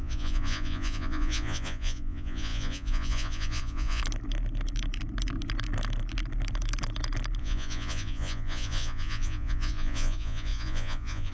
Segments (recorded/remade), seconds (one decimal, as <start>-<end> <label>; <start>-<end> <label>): 0.0-4.0 remade; 4.0-7.4 recorded; 7.4-11.3 remade